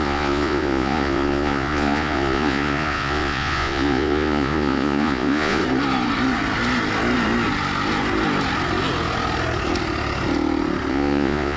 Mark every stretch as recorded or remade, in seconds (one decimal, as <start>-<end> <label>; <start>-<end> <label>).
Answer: 0.0-5.6 remade; 5.6-10.9 recorded; 10.9-11.6 remade